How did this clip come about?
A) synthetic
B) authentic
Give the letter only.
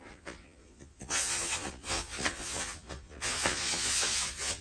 A